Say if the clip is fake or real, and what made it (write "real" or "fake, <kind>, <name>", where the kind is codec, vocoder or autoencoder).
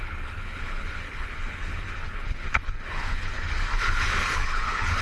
fake, codec, HILCodec